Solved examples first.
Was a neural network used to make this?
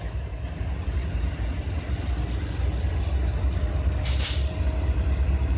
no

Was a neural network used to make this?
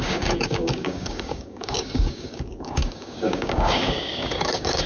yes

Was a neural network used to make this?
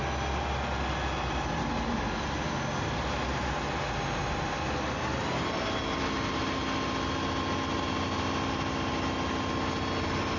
no